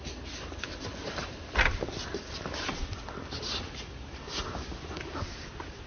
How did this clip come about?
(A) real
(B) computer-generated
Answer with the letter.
A